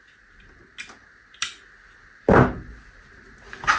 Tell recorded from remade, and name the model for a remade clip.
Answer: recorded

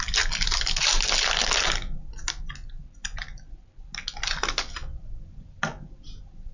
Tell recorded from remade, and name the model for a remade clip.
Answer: recorded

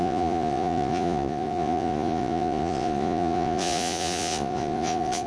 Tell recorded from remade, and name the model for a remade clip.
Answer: remade, vocoder, Vocos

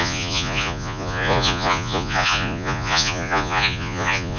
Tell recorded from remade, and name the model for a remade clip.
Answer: remade, vocoder, Vocos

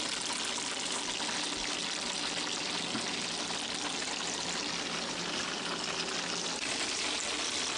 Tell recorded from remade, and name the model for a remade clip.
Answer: recorded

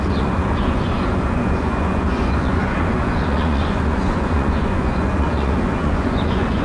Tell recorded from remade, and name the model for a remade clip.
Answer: remade, vocoder, Vocos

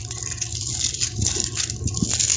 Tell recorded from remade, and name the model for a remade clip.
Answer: recorded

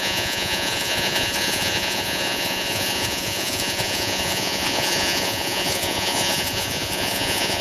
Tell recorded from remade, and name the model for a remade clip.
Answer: remade, vocoder, Vocos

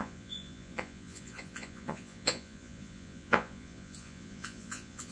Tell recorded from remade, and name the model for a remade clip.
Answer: remade, vocoder, Vocos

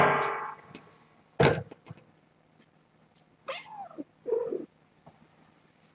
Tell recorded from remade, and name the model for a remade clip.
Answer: recorded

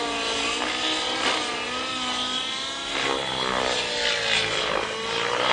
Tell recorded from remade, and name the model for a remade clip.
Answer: recorded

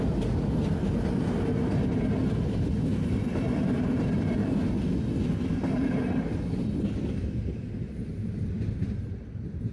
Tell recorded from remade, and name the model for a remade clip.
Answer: recorded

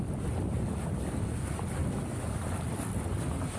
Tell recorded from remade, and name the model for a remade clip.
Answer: recorded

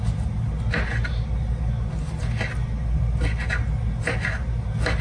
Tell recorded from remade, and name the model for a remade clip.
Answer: recorded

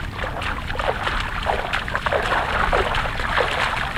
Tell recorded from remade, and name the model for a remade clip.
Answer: recorded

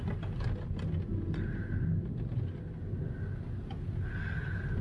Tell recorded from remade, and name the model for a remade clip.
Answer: recorded